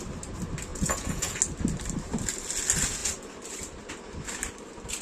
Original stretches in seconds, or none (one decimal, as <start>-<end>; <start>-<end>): 0.0-0.7; 1.4-5.0